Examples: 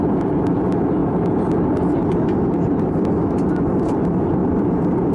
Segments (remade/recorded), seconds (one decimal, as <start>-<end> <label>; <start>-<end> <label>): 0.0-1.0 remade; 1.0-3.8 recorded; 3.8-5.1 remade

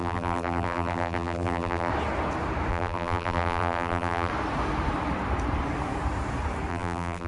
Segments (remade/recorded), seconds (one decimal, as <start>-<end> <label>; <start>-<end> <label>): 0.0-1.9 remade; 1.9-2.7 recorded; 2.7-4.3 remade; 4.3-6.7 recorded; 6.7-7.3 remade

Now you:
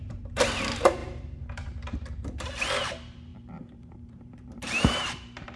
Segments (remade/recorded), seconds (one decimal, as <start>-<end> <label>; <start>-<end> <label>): 0.0-0.6 remade; 0.6-1.0 recorded; 1.0-2.5 remade; 2.5-3.3 recorded; 3.3-5.6 remade

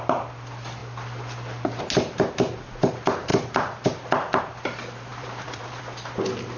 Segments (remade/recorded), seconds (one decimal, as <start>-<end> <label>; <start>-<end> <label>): 0.0-5.1 recorded; 5.1-5.8 remade; 5.8-6.6 recorded

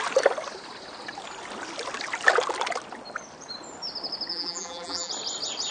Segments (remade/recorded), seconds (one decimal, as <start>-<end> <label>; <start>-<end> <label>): 0.0-4.3 recorded; 4.3-5.1 remade; 5.1-5.7 recorded

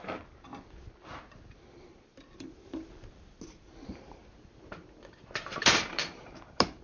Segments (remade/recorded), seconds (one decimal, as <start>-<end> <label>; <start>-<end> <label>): 0.0-0.5 remade; 0.5-1.8 recorded; 1.8-4.2 remade; 4.2-5.6 recorded; 5.6-6.8 remade

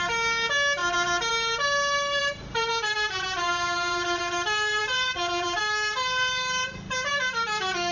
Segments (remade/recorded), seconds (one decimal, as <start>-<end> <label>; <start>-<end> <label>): 0.0-0.8 recorded; 0.8-1.3 remade; 1.3-2.2 recorded; 2.2-4.2 remade; 4.2-4.8 recorded; 4.8-5.6 remade; 5.6-7.9 recorded